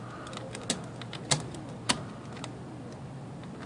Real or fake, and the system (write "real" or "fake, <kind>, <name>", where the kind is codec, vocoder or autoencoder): real